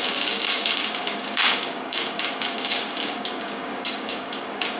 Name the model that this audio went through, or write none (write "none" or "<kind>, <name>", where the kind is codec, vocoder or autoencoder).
codec, DAC